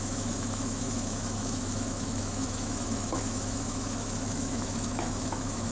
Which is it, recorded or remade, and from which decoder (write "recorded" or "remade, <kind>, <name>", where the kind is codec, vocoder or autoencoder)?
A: remade, autoencoder, DAC-VAE